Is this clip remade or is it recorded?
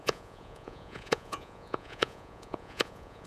remade